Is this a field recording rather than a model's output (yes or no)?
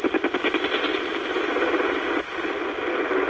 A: no